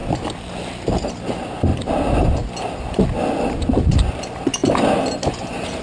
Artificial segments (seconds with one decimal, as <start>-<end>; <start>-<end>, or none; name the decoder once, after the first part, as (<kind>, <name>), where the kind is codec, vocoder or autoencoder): none